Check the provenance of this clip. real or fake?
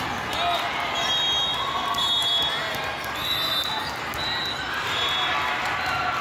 real